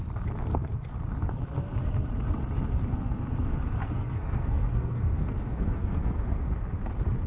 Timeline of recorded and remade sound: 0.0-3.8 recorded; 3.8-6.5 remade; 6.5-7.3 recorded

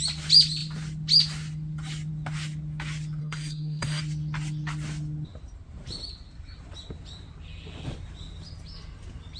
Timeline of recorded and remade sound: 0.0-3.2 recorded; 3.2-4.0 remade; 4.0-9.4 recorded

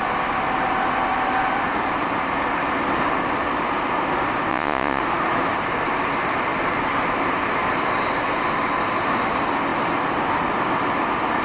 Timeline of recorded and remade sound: 0.0-4.5 recorded; 4.5-5.0 remade; 5.0-11.4 recorded

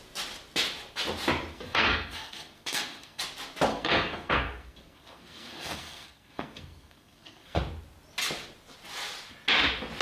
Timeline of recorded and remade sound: 0.0-1.5 recorded; 1.5-3.2 remade; 3.2-3.7 recorded; 3.7-7.6 remade; 7.6-10.0 recorded

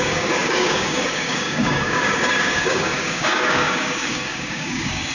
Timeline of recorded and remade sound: 0.0-5.1 remade